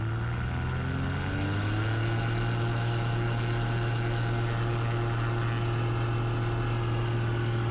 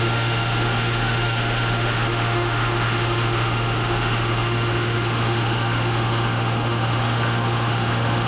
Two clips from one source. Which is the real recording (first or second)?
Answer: first